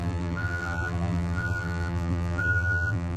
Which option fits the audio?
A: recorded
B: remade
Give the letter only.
B